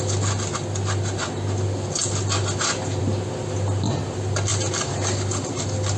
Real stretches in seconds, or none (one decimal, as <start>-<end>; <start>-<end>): 0.0-4.5